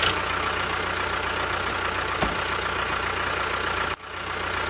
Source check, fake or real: real